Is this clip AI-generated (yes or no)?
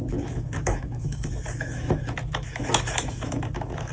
yes